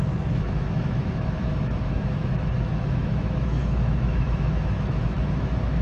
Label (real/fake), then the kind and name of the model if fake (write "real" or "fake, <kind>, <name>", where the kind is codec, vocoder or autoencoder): fake, autoencoder, DAC-VAE